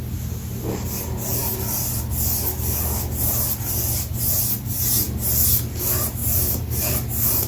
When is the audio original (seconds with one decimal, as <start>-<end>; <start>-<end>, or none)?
0.0-7.5